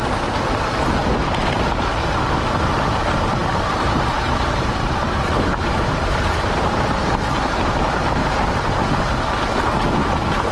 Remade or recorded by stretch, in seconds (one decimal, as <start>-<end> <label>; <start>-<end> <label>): 0.0-3.4 recorded; 3.4-7.2 remade; 7.2-8.2 recorded; 8.2-9.1 remade; 9.1-10.5 recorded